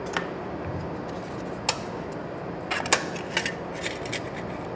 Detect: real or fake real